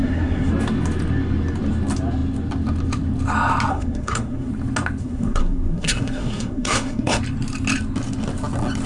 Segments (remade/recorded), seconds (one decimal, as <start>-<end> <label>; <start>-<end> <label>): 0.0-0.5 remade; 0.5-3.7 recorded; 3.7-4.5 remade; 4.5-5.0 recorded; 5.0-7.2 remade; 7.2-8.9 recorded